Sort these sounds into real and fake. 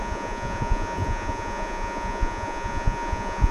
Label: fake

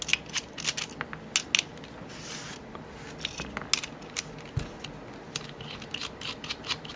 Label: real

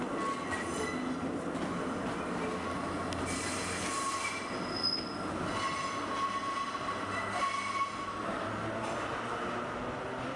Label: real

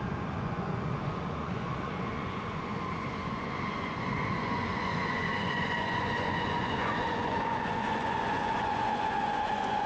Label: fake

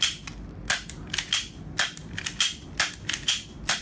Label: real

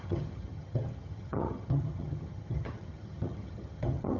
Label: fake